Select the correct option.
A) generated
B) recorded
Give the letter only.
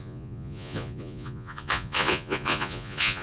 A